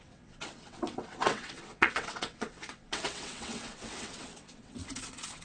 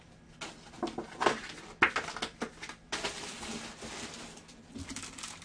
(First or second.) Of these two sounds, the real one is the second